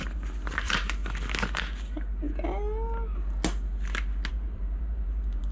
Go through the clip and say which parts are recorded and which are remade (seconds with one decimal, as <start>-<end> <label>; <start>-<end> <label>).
0.0-1.0 remade; 1.0-4.3 recorded; 4.3-5.5 remade